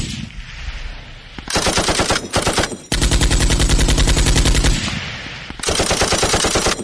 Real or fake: real